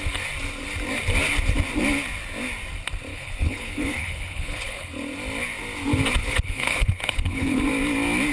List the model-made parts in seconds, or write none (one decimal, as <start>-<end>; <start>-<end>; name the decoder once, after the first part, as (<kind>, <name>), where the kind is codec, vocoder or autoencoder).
3.1-4.9 (codec, HILCodec); 6.2-7.6